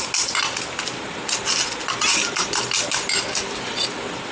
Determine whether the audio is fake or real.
real